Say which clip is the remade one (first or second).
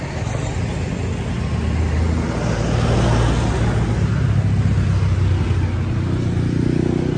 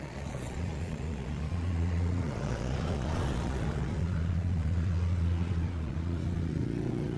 second